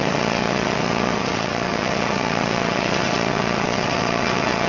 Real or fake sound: fake